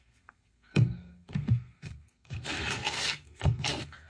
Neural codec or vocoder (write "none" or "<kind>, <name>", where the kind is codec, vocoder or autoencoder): codec, SNAC